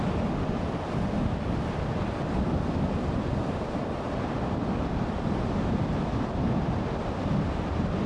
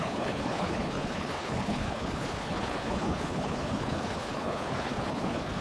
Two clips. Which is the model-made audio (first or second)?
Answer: second